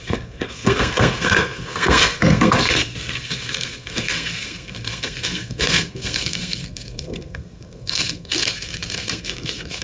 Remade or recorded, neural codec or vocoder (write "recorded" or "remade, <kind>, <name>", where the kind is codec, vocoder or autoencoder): remade, codec, SNAC